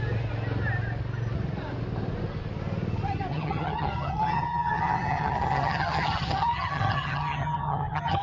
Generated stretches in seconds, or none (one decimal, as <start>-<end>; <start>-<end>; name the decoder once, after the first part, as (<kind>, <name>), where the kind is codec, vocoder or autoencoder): 3.3-8.2 (vocoder, HiFi-GAN)